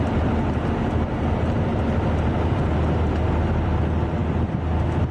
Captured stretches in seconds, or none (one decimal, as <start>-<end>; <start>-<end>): 0.0-5.1